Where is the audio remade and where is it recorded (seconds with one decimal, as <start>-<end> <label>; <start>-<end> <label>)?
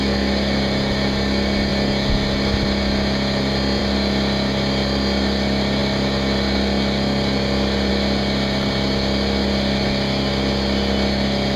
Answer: 0.0-11.6 recorded